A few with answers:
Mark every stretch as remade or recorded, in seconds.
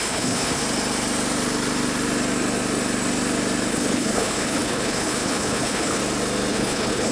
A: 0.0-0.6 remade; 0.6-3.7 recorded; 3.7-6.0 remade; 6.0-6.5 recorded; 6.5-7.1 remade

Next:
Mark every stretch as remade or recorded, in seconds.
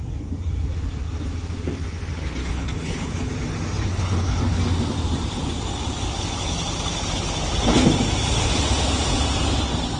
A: 0.0-2.4 recorded; 2.4-3.3 remade; 3.3-3.9 recorded; 3.9-4.6 remade; 4.6-10.0 recorded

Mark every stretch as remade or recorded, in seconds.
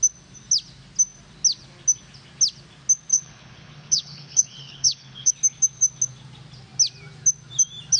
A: 0.0-3.1 recorded; 3.1-5.3 remade; 5.3-8.0 recorded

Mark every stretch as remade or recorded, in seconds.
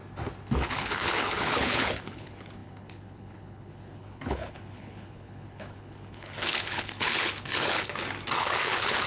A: 0.0-0.6 recorded; 0.6-7.9 remade; 7.9-8.4 recorded; 8.4-9.1 remade